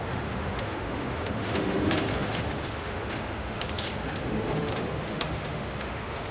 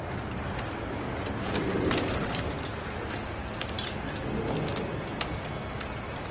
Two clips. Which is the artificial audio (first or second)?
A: first